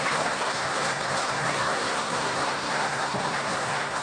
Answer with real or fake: fake